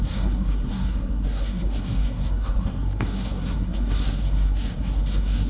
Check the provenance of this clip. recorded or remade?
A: remade